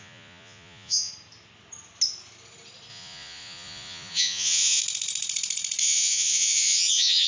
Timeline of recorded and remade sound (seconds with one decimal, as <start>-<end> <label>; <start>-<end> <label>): 0.0-1.1 remade; 1.1-2.9 recorded; 2.9-4.8 remade; 4.8-5.8 recorded; 5.8-7.3 remade